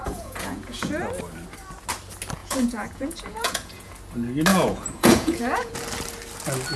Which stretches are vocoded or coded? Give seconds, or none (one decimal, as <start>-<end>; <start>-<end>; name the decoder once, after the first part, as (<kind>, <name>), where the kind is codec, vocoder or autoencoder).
0.0-1.0 (vocoder, Vocos); 2.4-3.9; 4.5-5.7